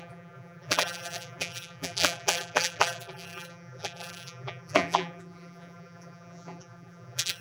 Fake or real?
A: fake